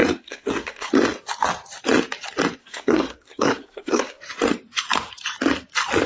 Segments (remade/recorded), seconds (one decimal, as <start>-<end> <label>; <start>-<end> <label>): 0.0-0.9 remade; 0.9-2.6 recorded; 2.6-4.2 remade; 4.2-6.1 recorded